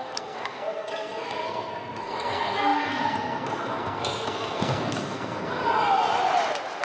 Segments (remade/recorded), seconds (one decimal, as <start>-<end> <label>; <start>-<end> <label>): 0.0-5.6 remade; 5.6-6.8 recorded